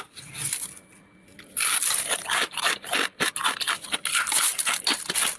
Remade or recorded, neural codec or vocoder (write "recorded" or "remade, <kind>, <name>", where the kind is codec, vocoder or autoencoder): recorded